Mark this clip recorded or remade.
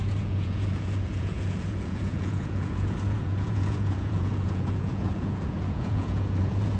remade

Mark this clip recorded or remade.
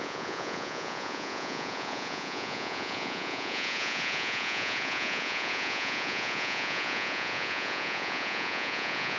remade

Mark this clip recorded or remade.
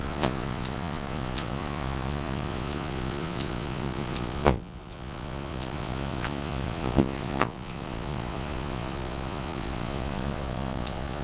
remade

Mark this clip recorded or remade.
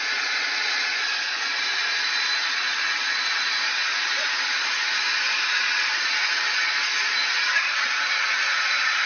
remade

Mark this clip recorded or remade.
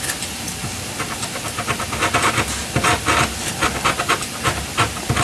recorded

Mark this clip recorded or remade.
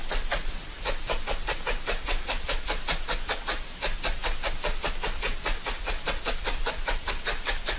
recorded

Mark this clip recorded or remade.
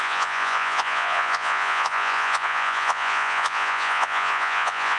remade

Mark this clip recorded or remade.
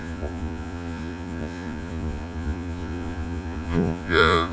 remade